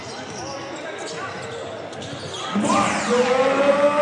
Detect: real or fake real